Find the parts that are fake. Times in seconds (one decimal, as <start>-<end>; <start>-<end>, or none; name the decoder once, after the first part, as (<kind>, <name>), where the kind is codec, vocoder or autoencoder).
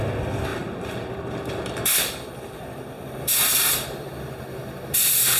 0.5-1.1 (vocoder, BigVGAN v2)